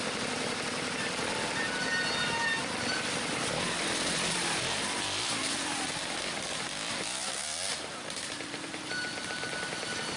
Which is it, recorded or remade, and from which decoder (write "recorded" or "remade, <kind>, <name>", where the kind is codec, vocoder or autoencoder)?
recorded